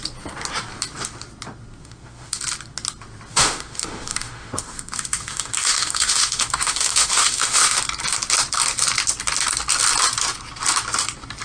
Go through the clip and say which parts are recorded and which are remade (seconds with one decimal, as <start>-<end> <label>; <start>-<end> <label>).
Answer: 0.0-1.8 recorded; 1.8-2.4 remade; 2.4-3.3 recorded; 3.3-7.8 remade; 7.8-11.4 recorded